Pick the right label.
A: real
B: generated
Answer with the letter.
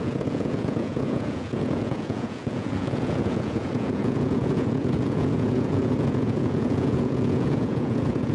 B